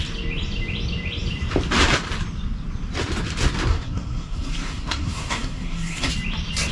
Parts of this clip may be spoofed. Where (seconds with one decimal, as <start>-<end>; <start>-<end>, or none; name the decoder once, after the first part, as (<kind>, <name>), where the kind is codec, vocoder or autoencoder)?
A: 3.7-6.1 (codec, SNAC)